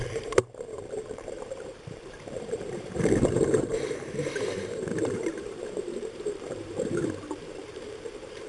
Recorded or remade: remade